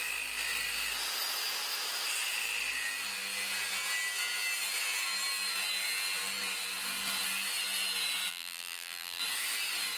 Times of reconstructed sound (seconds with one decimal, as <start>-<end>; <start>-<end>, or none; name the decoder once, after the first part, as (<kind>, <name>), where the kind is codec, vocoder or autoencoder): 8.3-9.2 (vocoder, BigVGAN v2)